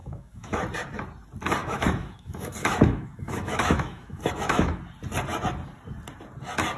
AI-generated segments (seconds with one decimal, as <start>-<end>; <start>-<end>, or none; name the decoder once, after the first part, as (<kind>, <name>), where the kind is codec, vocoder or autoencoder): 0.0-0.6 (autoencoder, DAC-VAE); 1.6-4.8